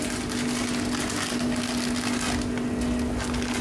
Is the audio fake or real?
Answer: real